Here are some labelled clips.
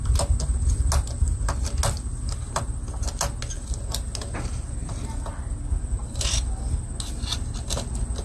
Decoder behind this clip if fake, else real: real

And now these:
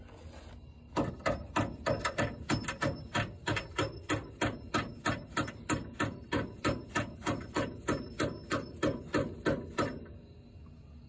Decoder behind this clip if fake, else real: real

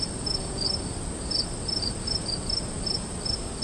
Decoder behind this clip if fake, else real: real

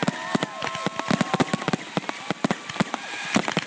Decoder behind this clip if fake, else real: real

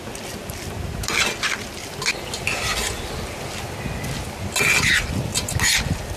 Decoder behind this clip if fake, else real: real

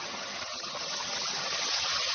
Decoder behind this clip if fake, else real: fake, vocoder, HiFi-GAN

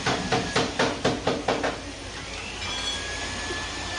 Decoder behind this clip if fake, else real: real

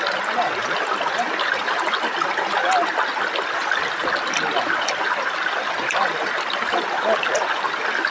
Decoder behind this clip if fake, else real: real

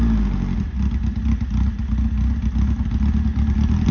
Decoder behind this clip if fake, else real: real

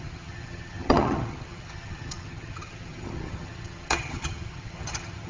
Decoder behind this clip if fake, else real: fake, vocoder, HiFi-GAN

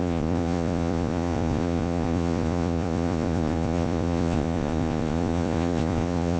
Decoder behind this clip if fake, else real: fake, vocoder, Vocos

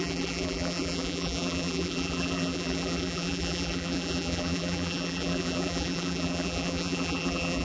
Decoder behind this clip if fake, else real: fake, vocoder, BigVGAN v2